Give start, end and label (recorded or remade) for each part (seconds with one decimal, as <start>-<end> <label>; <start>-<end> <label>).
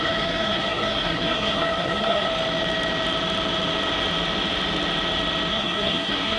0.0-2.3 remade; 2.3-5.5 recorded; 5.5-6.4 remade